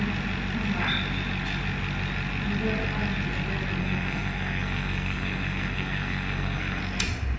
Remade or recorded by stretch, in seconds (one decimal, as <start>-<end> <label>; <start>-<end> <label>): 0.0-3.8 recorded; 3.8-6.8 remade; 6.8-7.4 recorded